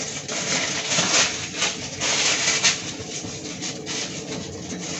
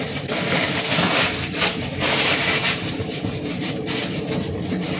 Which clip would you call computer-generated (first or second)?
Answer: second